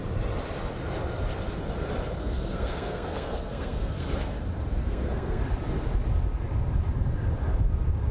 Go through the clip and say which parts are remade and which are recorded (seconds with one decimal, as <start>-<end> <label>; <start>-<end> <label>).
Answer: 0.0-2.2 recorded; 2.2-4.3 remade; 4.3-4.8 recorded; 4.8-5.4 remade; 5.4-8.1 recorded

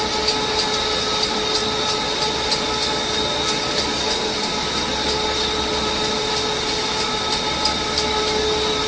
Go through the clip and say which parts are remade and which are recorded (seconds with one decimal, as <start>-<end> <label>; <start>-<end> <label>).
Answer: 0.0-8.9 recorded

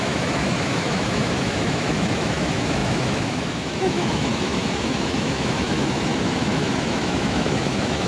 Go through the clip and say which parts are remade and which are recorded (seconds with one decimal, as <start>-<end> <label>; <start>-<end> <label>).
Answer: 0.0-8.1 remade

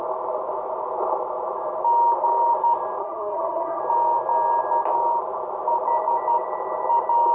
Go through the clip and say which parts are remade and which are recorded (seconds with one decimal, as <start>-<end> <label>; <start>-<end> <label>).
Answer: 0.0-3.0 recorded; 3.0-3.8 remade; 3.8-7.3 recorded

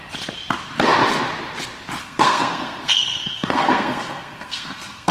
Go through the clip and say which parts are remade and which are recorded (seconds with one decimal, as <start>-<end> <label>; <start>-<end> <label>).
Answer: 0.0-2.0 recorded; 2.0-5.1 remade